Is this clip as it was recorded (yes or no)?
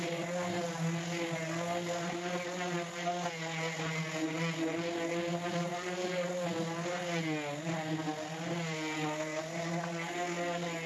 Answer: yes